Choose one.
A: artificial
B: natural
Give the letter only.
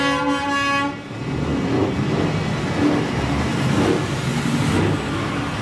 B